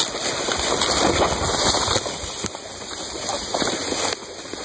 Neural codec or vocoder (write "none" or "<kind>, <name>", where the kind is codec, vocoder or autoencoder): none